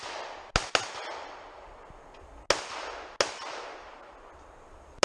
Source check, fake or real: real